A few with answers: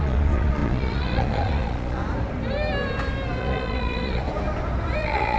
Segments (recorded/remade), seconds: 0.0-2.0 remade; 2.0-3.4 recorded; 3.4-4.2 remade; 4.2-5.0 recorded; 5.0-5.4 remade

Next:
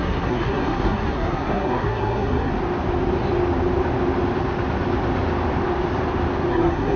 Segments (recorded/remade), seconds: 0.0-2.5 remade; 2.5-6.5 recorded; 6.5-7.0 remade